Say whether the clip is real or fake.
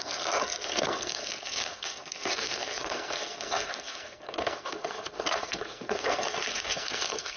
fake